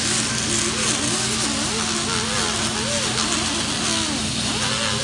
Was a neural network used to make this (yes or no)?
no